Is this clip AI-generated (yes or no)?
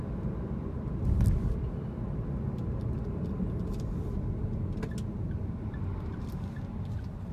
no